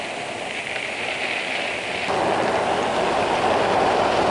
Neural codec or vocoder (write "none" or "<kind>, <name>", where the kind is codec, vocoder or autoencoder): none